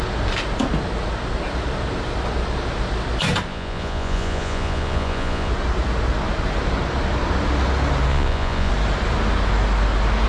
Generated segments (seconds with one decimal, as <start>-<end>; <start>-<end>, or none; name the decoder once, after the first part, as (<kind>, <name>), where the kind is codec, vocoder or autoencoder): 3.5-5.5 (vocoder, Vocos); 8.1-8.7

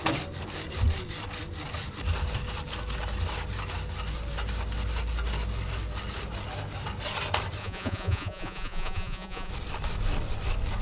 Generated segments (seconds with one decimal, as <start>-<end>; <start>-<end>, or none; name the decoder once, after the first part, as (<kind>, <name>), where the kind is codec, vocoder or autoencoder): 7.6-9.5 (vocoder, Vocos)

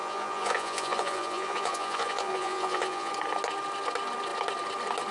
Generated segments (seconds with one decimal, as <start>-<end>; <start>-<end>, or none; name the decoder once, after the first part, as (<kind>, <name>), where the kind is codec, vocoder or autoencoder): 0.0-3.1 (vocoder, Vocos)